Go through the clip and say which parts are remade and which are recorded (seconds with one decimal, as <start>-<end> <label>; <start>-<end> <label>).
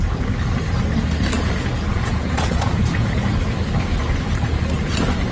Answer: 0.0-1.9 recorded; 1.9-3.6 remade; 3.6-5.3 recorded